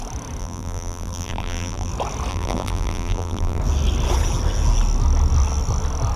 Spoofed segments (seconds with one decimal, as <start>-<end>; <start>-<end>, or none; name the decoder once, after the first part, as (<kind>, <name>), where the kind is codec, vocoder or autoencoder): 0.4-1.9 (vocoder, BigVGAN v2); 2.3-3.6